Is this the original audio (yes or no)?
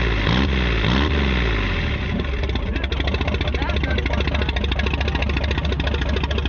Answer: yes